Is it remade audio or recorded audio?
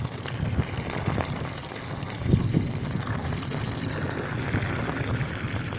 recorded